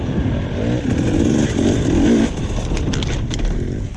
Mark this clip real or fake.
real